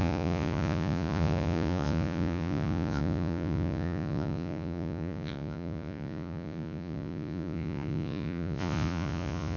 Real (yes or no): no